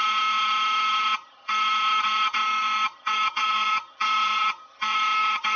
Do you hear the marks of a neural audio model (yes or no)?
yes